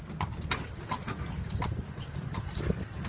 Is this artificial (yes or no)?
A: no